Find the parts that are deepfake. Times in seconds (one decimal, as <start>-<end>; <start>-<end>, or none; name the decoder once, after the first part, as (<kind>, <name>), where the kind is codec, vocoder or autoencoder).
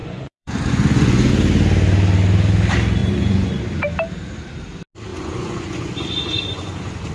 0.0-1.3 (vocoder, Vocos); 3.0-3.6; 5.1-7.1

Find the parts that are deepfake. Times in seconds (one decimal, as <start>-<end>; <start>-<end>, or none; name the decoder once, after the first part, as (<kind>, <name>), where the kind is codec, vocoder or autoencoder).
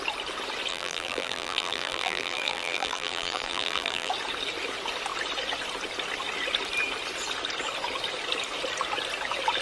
0.7-4.1 (vocoder, BigVGAN v2)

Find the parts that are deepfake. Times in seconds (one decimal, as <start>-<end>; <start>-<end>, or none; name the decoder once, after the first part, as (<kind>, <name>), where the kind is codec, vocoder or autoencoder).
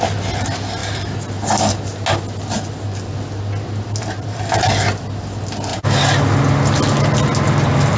none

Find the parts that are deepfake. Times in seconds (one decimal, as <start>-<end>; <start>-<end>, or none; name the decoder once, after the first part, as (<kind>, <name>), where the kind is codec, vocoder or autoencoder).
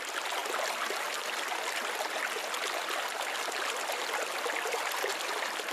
none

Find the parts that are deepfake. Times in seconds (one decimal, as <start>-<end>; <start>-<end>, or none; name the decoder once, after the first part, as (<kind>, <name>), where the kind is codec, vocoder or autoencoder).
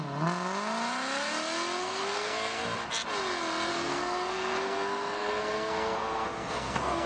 1.8-2.6 (codec, SNAC); 3.7-7.1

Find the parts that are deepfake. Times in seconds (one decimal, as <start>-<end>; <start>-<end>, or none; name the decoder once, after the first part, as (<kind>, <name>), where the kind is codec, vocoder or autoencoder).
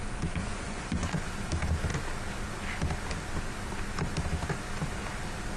0.4-1.2 (vocoder, Vocos)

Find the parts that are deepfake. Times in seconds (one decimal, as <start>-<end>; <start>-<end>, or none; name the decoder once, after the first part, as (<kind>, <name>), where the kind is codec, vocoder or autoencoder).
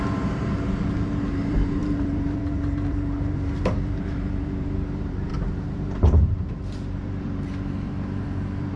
0.0-8.8 (vocoder, BigVGAN v2)